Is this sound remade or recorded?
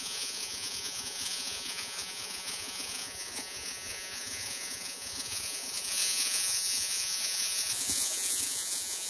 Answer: remade